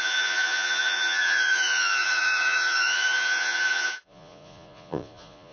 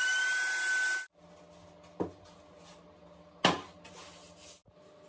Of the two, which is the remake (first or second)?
first